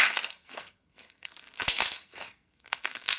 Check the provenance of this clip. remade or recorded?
remade